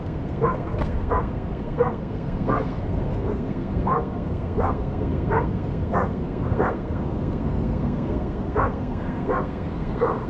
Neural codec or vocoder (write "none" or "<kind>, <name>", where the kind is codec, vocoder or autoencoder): codec, SNAC